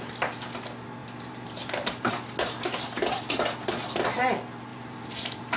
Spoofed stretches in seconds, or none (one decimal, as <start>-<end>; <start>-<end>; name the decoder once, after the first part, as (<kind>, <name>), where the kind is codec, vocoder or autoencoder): 1.0-2.1 (vocoder, BigVGAN v2); 4.7-5.6